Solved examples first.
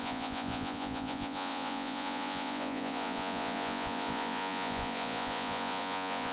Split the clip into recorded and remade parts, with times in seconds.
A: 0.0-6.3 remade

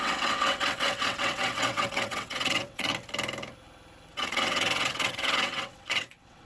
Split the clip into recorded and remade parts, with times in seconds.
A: 0.0-2.9 remade; 2.9-4.1 recorded; 4.1-6.5 remade

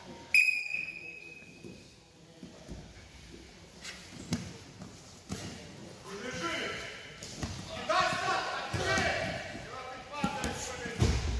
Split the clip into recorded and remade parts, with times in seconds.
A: 0.0-0.6 recorded; 0.6-1.2 remade; 1.2-11.4 recorded

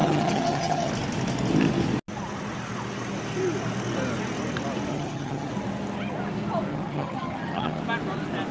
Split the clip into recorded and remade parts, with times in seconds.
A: 0.0-0.9 remade; 0.9-4.9 recorded; 4.9-5.5 remade; 5.5-6.7 recorded; 6.7-7.8 remade; 7.8-8.5 recorded

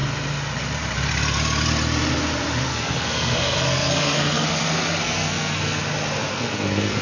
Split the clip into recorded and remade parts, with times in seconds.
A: 0.0-2.7 recorded; 2.7-5.8 remade; 5.8-6.3 recorded; 6.3-7.0 remade

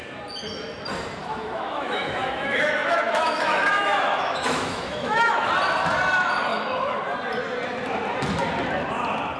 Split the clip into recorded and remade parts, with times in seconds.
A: 0.0-1.2 recorded; 1.2-5.5 remade; 5.5-6.5 recorded; 6.5-7.0 remade; 7.0-9.4 recorded